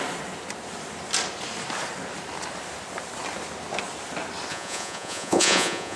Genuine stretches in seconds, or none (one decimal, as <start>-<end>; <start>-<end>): 0.0-4.5